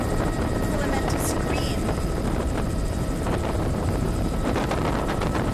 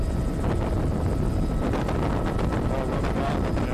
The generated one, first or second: first